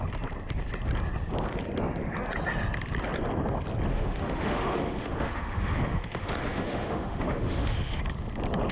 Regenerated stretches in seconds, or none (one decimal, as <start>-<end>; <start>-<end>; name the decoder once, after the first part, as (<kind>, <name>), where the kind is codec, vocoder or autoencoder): 3.9-8.0 (autoencoder, DAC-VAE)